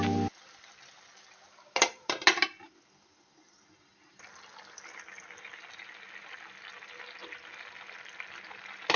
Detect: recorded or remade recorded